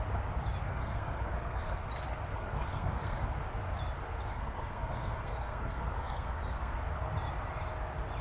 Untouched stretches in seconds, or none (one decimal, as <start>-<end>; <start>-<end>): 0.0-0.7; 1.9-2.3; 3.3-4.3; 6.8-8.2